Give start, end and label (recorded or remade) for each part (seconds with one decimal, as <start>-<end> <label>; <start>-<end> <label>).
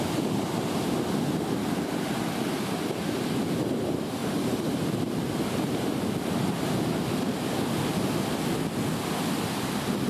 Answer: 0.0-4.2 recorded; 4.2-6.0 remade; 6.0-10.1 recorded